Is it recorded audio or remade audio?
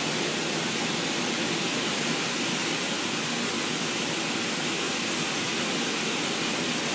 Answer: recorded